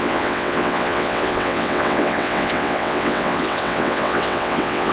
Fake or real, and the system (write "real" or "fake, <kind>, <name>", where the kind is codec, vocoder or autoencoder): fake, vocoder, WaveNeXt